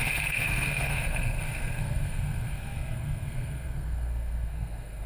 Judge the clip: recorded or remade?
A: remade